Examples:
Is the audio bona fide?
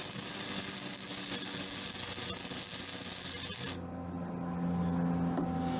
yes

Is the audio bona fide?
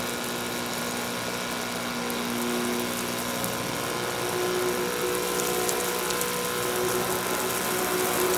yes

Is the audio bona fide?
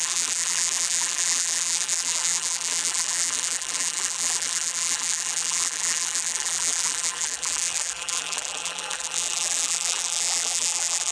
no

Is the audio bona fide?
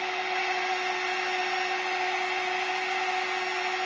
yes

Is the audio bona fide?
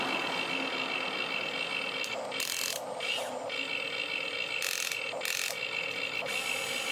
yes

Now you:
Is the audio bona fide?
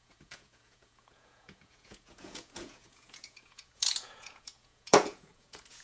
no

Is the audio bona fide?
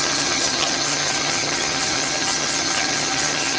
no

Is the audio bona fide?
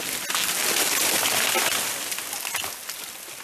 yes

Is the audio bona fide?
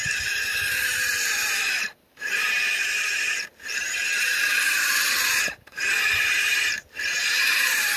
no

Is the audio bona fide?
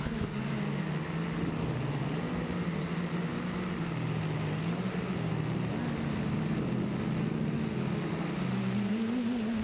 yes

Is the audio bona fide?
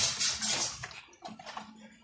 yes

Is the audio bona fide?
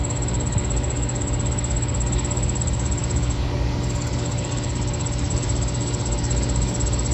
no